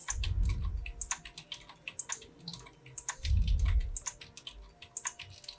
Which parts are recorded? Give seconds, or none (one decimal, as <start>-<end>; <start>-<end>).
0.0-5.6